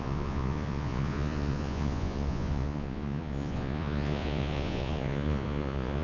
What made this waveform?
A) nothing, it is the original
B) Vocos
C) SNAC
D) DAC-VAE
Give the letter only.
B